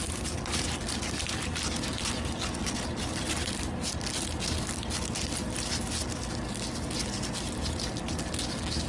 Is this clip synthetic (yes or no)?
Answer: no